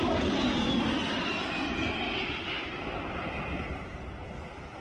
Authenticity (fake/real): real